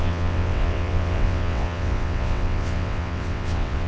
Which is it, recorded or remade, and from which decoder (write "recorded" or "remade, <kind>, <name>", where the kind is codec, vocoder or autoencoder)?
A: remade, vocoder, WaveNeXt